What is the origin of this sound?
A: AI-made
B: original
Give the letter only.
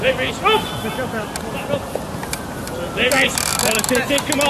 B